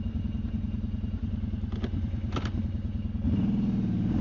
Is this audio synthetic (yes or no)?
no